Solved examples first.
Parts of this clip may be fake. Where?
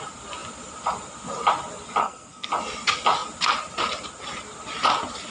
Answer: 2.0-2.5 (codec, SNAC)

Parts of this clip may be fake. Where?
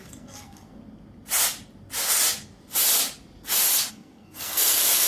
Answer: 0.0-0.8 (codec, SNAC); 3.9-5.1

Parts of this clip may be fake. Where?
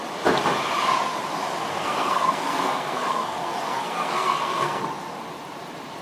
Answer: 1.7-4.8 (codec, SNAC)